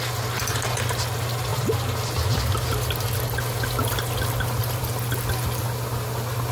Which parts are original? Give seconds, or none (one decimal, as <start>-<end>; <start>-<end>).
0.0-6.5